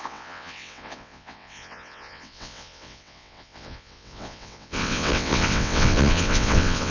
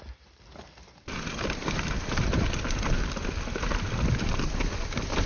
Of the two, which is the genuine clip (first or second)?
second